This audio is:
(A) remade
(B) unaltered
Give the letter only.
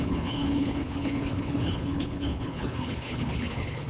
A